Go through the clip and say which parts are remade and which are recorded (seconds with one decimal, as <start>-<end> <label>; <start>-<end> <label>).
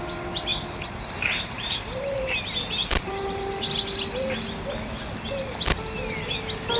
0.0-0.5 recorded; 0.5-2.4 remade; 2.4-2.8 recorded; 2.8-3.5 remade; 3.5-6.8 recorded